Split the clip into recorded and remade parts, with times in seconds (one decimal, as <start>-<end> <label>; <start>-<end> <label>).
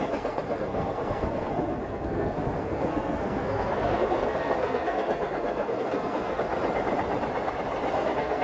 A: 0.0-6.4 remade; 6.4-7.9 recorded; 7.9-8.4 remade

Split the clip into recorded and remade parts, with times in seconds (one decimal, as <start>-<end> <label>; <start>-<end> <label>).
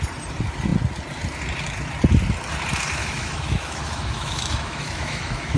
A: 0.0-3.0 recorded; 3.0-5.6 remade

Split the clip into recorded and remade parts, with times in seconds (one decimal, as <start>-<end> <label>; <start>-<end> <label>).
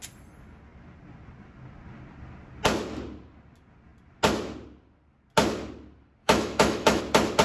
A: 0.0-6.2 recorded; 6.2-7.0 remade; 7.0-7.4 recorded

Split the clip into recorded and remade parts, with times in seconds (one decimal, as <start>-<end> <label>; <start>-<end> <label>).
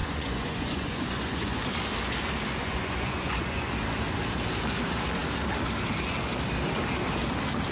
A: 0.0-1.6 remade; 1.6-2.6 recorded; 2.6-3.7 remade; 3.7-7.7 recorded